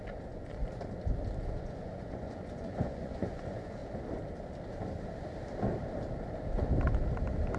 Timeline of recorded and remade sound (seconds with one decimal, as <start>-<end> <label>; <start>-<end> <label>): 0.0-0.6 remade; 0.6-1.5 recorded; 1.5-3.8 remade; 3.8-7.6 recorded